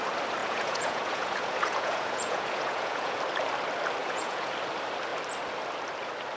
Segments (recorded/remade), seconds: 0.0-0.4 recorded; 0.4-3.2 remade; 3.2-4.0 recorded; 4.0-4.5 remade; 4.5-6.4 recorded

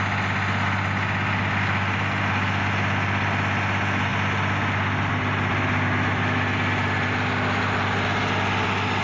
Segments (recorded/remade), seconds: 0.0-9.0 recorded